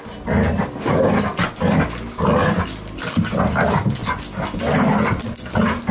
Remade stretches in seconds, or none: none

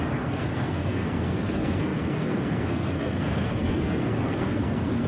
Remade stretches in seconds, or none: 0.0-5.1 (codec, SNAC)